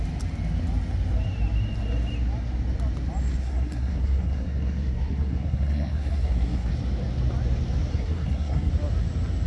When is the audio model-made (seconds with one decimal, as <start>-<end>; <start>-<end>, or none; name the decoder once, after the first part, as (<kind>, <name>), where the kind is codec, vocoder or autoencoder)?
3.4-6.7 (codec, SNAC); 7.9-8.7